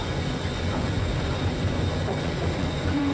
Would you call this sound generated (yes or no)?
yes